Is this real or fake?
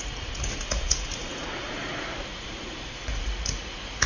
fake